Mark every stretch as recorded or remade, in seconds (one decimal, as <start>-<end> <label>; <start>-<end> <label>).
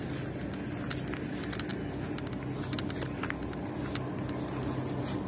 0.0-5.3 recorded